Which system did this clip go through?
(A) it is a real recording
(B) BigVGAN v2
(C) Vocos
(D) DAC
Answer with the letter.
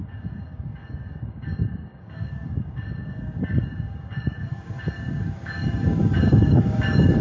D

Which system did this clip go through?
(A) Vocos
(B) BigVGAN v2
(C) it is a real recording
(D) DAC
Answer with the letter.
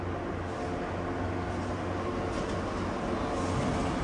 C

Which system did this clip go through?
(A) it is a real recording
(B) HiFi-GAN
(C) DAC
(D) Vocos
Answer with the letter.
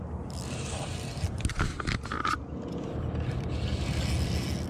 A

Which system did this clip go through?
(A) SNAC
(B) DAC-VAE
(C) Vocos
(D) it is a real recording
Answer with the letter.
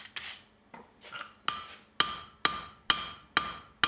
D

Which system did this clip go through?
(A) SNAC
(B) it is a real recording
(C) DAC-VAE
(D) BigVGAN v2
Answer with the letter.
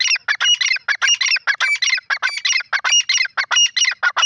B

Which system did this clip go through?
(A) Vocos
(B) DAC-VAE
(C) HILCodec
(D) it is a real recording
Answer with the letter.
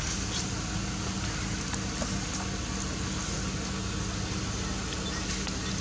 D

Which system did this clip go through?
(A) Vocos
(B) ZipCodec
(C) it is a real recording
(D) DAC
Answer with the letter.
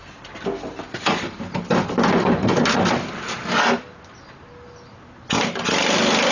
C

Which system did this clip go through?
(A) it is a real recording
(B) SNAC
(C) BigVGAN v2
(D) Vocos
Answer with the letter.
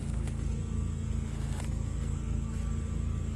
B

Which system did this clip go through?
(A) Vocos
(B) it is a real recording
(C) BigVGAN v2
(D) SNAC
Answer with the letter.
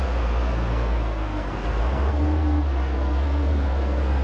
D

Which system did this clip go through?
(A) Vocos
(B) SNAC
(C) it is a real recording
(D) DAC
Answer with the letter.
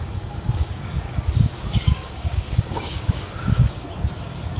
D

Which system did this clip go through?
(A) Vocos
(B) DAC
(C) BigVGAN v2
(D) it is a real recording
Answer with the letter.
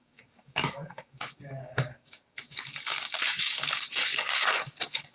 B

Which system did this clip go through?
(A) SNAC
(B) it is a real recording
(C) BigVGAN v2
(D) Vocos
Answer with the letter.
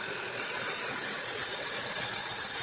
D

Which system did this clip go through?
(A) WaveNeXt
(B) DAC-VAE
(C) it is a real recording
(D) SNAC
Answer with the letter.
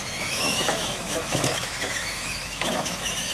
B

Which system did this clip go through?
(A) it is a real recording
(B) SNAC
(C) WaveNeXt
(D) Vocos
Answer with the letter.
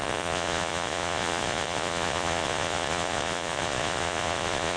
D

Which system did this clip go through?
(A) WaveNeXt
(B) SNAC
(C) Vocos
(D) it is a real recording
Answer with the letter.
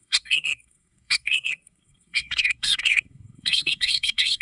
B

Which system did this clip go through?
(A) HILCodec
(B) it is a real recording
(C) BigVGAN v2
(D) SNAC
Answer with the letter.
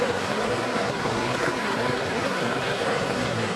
D